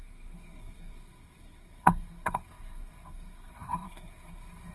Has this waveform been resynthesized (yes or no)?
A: yes